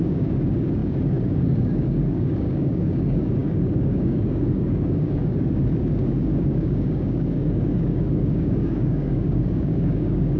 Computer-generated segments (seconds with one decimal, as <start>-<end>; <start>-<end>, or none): 0.0-10.4